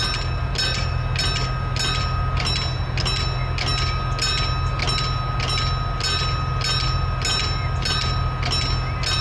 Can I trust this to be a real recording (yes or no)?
yes